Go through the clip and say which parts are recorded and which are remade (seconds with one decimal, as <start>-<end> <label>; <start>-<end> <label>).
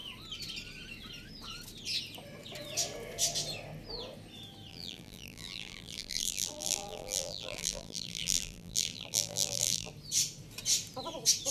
0.0-4.7 recorded; 4.7-9.9 remade; 9.9-11.5 recorded